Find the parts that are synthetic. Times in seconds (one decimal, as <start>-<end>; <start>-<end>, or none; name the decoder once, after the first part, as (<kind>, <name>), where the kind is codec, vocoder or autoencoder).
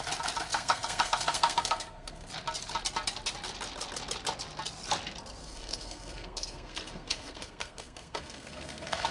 0.5-2.3 (codec, SNAC); 5.4-9.1